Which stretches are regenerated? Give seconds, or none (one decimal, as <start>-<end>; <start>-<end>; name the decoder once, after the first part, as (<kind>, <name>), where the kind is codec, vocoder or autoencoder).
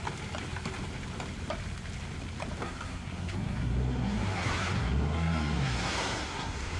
2.6-6.8 (codec, SNAC)